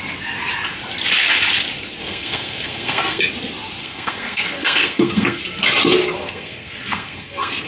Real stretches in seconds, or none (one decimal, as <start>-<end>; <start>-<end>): 0.0-2.0; 3.2-3.8; 5.4-6.2